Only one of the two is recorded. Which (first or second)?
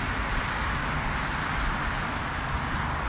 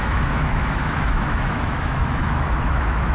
first